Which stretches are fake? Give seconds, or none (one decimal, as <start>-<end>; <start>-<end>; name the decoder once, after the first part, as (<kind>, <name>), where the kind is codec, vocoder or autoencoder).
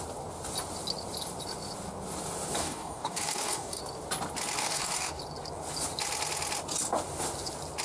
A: 2.6-3.8 (codec, DAC); 4.6-5.2